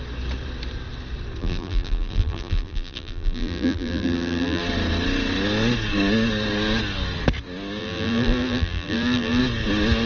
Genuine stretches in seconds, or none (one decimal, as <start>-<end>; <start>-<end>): 0.0-1.4; 4.6-7.8; 9.4-10.1